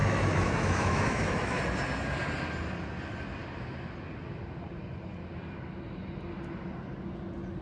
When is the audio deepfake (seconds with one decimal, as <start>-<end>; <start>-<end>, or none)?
0.0-1.6